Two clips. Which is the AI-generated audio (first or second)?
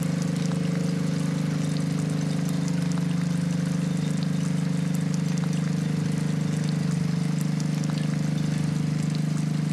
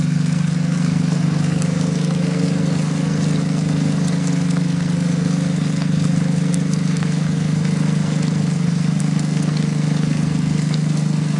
second